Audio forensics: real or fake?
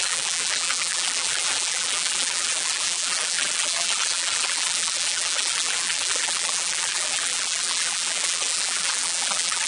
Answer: fake